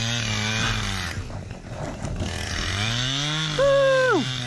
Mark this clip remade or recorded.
recorded